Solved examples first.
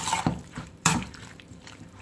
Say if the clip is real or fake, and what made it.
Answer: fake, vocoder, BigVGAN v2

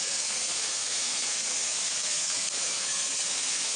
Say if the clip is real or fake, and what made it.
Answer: fake, codec, SNAC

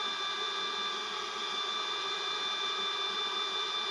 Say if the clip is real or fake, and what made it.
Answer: real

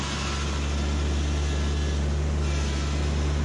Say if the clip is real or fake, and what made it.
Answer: real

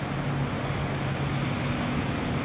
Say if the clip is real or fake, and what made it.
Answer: real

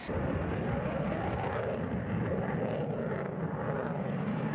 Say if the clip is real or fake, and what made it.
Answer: real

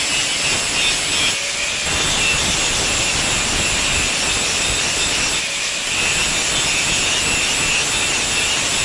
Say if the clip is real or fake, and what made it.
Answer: real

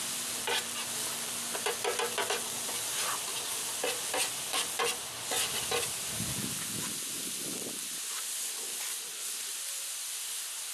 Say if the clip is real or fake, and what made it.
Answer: real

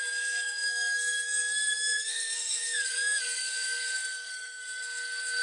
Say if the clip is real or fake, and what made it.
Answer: fake, codec, SNAC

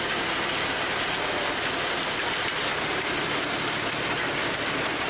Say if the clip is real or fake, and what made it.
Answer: real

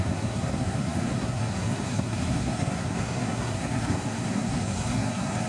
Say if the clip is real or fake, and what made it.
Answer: fake, codec, SNAC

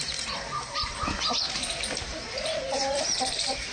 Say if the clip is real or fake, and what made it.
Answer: fake, vocoder, BigVGAN v2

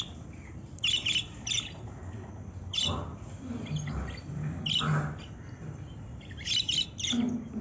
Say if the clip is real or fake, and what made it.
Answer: real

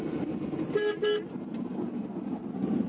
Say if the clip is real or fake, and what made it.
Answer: real